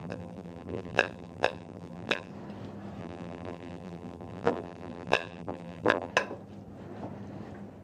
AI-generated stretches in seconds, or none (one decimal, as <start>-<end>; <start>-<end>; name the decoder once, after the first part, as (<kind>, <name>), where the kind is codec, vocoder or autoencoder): 0.0-2.3 (vocoder, BigVGAN v2); 3.0-6.1